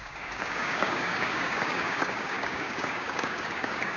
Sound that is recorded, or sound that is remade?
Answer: remade